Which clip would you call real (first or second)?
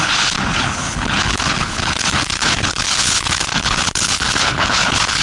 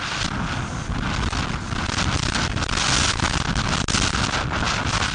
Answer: second